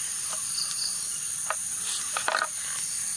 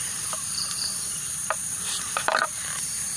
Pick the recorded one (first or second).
first